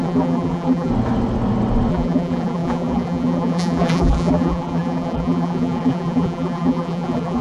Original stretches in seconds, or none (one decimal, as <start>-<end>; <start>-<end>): 0.9-1.9